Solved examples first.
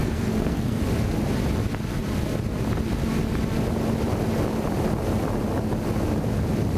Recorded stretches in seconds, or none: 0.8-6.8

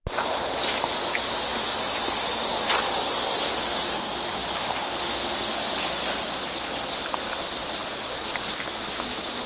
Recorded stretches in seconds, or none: 0.0-9.5

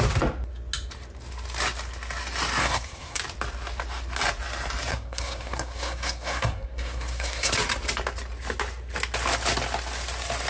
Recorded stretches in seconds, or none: 0.0-2.6; 3.2-4.9; 7.5-10.5

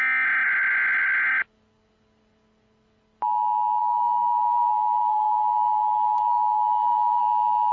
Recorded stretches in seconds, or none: 0.0-3.8; 7.2-7.7

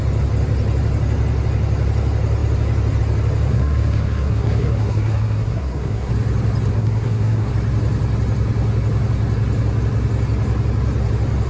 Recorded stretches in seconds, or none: 0.0-3.5; 6.1-6.7; 7.5-11.5

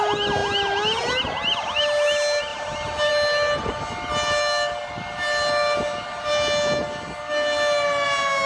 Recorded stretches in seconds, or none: 0.0-8.5